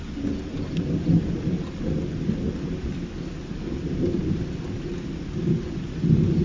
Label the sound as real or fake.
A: real